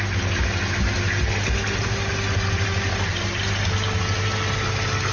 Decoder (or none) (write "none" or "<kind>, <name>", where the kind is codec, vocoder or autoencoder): none